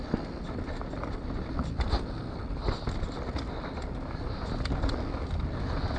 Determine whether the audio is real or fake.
real